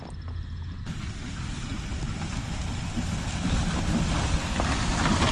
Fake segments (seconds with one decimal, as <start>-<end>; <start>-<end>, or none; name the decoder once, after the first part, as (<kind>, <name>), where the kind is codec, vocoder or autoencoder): none